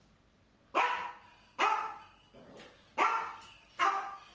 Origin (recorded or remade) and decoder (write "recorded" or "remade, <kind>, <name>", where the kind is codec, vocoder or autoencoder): recorded